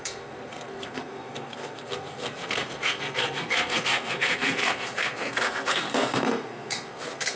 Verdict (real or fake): fake